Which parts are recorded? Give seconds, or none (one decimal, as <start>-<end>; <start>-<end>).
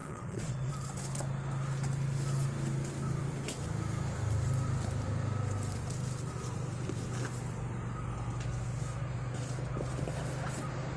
0.7-11.0